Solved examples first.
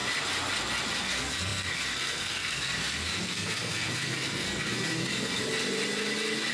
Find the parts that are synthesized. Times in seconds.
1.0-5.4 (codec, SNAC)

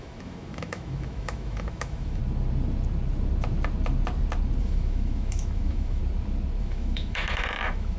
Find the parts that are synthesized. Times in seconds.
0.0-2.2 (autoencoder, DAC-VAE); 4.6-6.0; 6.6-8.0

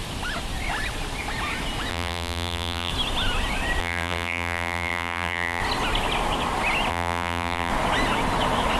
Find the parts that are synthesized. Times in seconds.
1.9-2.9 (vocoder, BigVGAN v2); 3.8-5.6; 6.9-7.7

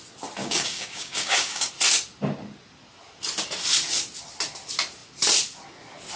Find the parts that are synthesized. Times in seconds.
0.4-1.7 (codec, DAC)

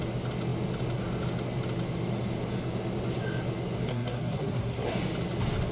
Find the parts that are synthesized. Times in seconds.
3.9-4.9 (codec, SNAC)

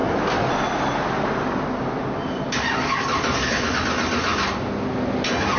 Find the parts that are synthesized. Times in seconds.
none

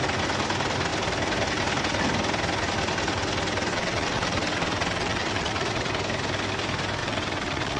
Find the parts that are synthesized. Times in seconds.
3.7-5.9 (vocoder, WaveNeXt); 7.0-7.8